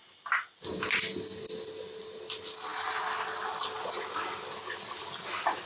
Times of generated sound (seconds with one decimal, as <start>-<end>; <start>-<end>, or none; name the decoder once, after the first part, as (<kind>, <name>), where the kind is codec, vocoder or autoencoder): none